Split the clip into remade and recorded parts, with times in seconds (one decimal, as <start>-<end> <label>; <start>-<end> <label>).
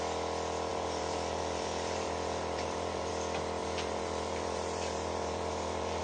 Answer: 0.0-0.7 recorded; 0.7-3.1 remade; 3.1-3.6 recorded; 3.6-6.0 remade